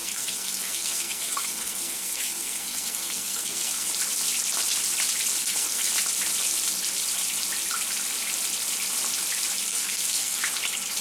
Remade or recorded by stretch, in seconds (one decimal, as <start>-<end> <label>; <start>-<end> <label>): 0.0-3.9 remade; 3.9-5.4 recorded; 5.4-5.9 remade; 5.9-9.7 recorded; 9.7-10.4 remade; 10.4-11.0 recorded